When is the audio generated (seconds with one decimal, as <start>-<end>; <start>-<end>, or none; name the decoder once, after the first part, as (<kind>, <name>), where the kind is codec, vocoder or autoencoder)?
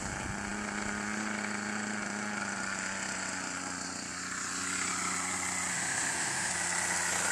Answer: 5.7-6.5 (autoencoder, DAC-VAE)